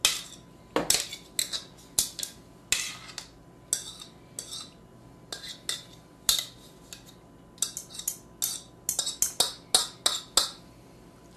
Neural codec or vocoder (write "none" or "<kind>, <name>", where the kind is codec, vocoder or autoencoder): none